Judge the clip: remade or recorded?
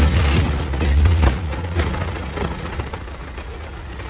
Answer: remade